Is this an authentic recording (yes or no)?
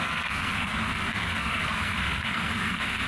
no